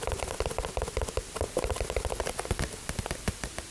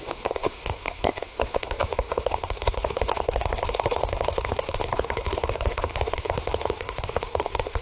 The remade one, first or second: second